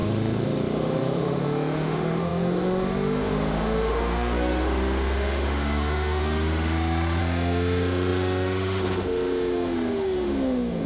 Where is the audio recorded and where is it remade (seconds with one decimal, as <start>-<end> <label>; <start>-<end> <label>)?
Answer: 0.0-10.9 remade